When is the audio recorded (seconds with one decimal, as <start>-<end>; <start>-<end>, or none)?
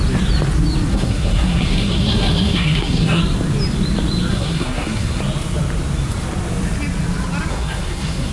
0.0-0.9; 3.2-4.3; 5.2-7.5